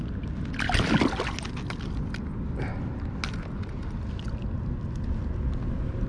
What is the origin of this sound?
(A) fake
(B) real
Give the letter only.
B